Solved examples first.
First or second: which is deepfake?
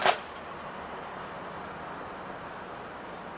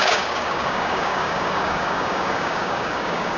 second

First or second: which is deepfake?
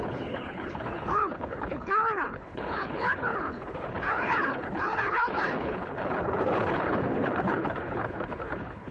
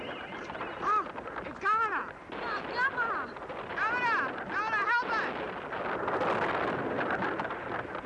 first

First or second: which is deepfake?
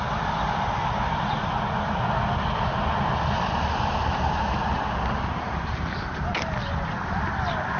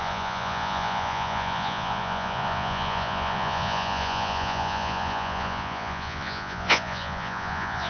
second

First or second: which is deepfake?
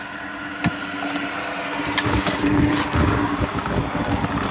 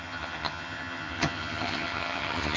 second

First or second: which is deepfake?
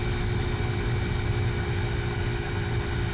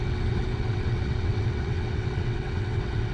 second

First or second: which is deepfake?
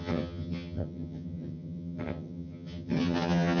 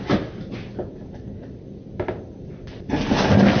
first